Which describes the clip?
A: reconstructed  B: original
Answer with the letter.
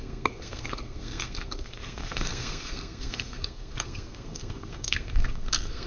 A